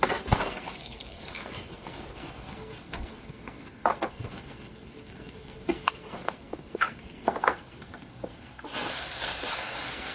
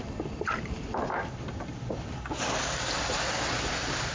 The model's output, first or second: first